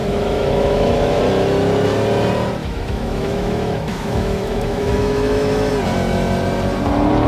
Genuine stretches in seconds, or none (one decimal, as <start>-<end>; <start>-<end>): 1.2-2.6; 5.7-7.3